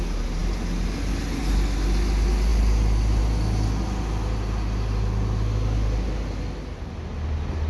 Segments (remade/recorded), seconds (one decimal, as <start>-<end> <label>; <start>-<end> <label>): 0.0-7.7 recorded